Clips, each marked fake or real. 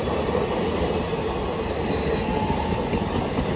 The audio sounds real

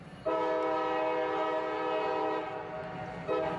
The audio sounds real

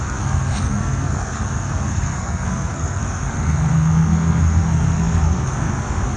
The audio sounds fake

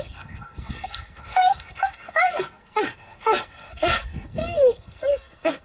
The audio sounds fake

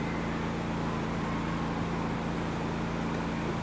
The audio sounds real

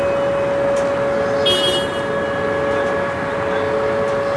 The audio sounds real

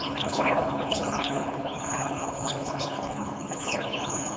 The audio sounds fake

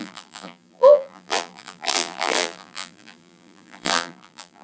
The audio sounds fake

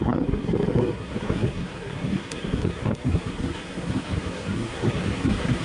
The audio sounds fake